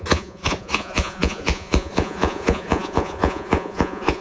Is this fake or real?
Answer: fake